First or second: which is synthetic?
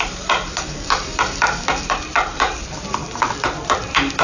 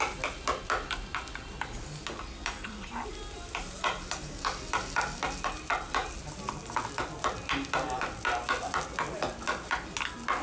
first